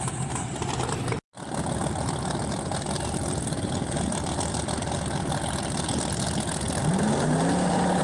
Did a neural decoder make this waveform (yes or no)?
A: no